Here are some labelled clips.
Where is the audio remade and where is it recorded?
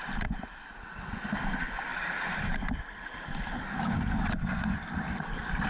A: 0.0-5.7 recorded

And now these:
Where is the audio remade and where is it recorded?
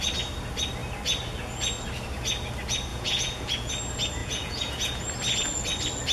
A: 0.0-2.9 recorded; 2.9-3.7 remade; 3.7-4.2 recorded; 4.2-5.0 remade; 5.0-6.1 recorded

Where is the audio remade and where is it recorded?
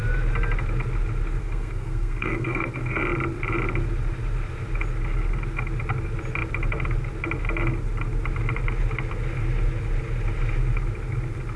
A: 0.0-1.4 recorded; 1.4-2.7 remade; 2.7-11.6 recorded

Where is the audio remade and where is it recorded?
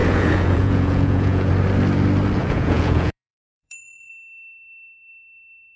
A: 0.0-1.5 remade; 1.5-2.4 recorded; 2.4-4.1 remade; 4.1-5.8 recorded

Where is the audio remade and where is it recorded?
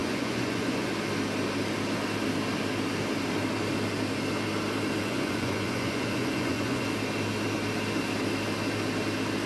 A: 0.0-0.9 remade; 0.9-5.0 recorded; 5.0-6.9 remade; 6.9-9.5 recorded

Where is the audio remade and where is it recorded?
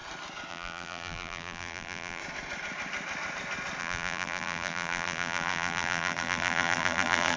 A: 0.0-0.5 recorded; 0.5-2.2 remade; 2.2-3.8 recorded; 3.8-7.4 remade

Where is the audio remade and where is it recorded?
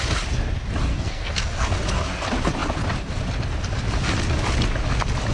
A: 0.0-0.9 recorded; 0.9-1.8 remade; 1.8-5.3 recorded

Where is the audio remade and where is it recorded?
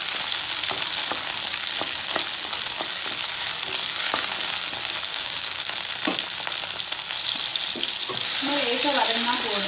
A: 0.0-5.1 recorded; 5.1-5.6 remade; 5.6-9.7 recorded